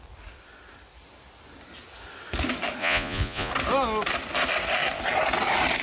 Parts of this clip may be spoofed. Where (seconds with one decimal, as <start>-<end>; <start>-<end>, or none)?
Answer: 2.8-3.5